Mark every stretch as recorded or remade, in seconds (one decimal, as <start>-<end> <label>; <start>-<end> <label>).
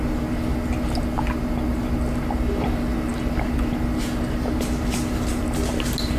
0.0-6.2 recorded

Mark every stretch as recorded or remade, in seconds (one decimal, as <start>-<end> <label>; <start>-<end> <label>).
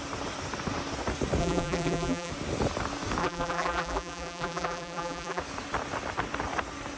0.0-1.4 recorded; 1.4-2.3 remade; 2.3-3.2 recorded; 3.2-5.4 remade; 5.4-7.0 recorded